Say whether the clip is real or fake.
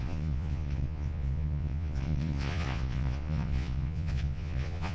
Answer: fake